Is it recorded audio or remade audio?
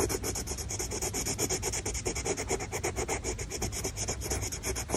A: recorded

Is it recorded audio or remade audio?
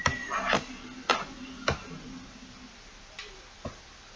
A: recorded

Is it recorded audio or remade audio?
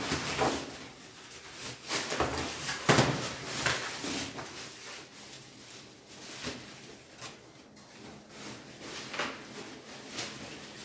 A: recorded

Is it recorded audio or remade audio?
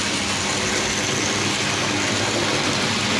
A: recorded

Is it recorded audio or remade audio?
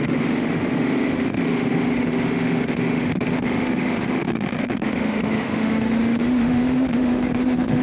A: remade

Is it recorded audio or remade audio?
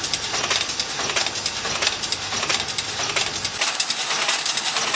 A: recorded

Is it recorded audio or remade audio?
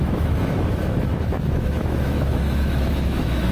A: remade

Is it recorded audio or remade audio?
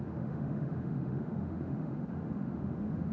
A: remade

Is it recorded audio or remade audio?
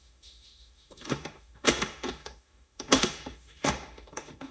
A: remade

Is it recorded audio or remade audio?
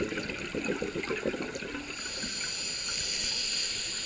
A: recorded